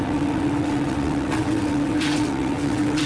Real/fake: fake